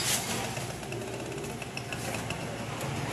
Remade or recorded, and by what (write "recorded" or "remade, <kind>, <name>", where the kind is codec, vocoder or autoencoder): recorded